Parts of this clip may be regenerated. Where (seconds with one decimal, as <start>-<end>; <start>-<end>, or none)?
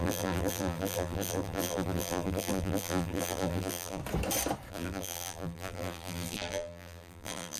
0.0-4.0; 4.7-7.6